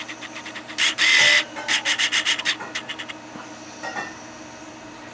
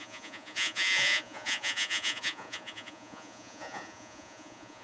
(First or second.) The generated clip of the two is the second